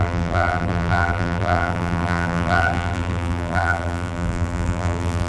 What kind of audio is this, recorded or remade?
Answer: remade